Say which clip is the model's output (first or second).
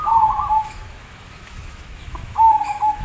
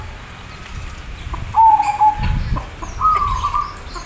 first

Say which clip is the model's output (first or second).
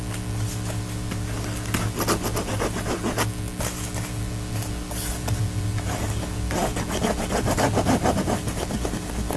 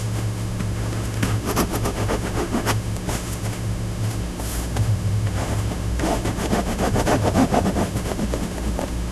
second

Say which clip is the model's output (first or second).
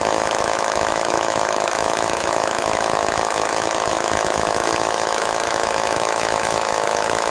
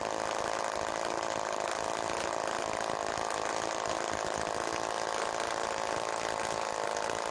first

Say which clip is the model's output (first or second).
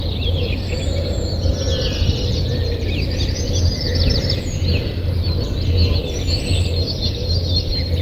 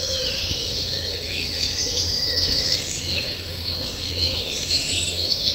second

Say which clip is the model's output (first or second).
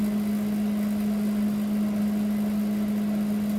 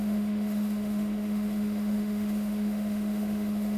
second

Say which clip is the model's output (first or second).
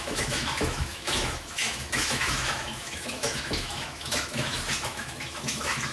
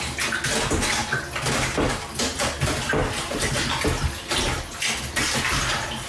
first